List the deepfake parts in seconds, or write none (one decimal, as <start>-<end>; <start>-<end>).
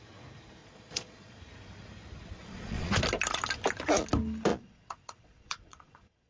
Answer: 0.6-1.4; 2.4-2.9; 4.5-6.3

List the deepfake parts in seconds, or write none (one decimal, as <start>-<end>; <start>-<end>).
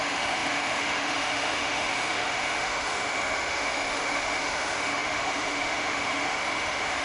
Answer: 0.0-7.0